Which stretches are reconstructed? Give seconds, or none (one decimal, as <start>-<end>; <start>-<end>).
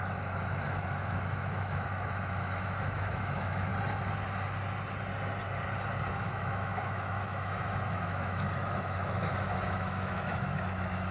0.0-3.7; 6.1-11.1